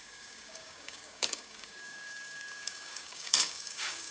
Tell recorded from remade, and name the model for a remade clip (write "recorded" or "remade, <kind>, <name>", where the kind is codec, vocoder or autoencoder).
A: remade, codec, DAC